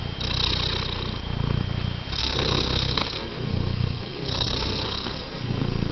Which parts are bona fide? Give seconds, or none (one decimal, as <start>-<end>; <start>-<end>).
0.0-2.2